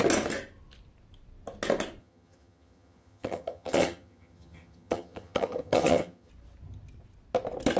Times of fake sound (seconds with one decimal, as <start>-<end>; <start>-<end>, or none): 2.0-6.3